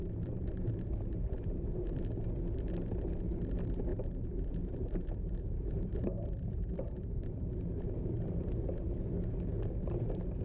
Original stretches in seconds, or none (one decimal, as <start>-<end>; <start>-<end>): 1.9-3.9; 8.6-10.4